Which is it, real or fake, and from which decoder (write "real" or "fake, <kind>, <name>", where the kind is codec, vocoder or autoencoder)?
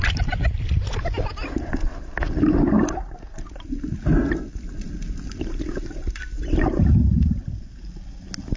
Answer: real